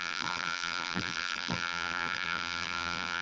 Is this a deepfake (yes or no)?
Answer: yes